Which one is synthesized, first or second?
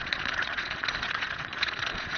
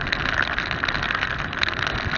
first